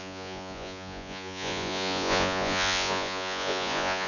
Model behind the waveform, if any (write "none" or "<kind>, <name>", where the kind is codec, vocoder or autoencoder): vocoder, Vocos